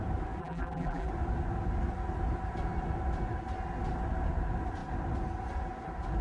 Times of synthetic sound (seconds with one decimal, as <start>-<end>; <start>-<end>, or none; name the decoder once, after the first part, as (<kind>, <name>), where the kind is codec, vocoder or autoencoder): 0.4-1.1 (vocoder, BigVGAN v2)